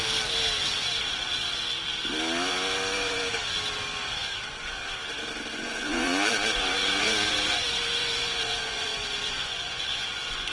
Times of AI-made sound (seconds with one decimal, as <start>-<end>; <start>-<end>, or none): 1.0-1.4; 4.1-4.8; 5.5-10.5